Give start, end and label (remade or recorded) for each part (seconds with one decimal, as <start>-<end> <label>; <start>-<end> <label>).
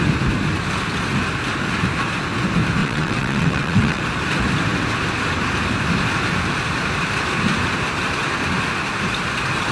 0.0-2.8 recorded; 2.8-4.0 remade; 4.0-9.7 recorded